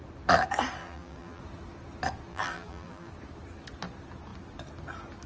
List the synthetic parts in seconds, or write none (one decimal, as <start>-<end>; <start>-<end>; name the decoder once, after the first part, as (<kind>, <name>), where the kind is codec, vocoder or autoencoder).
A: 0.8-1.4 (vocoder, BigVGAN v2); 2.3-3.1